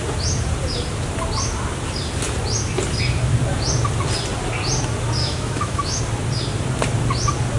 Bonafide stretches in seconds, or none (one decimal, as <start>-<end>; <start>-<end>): 0.0-5.2; 6.0-7.6